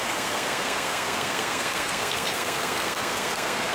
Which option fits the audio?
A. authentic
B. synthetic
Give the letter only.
B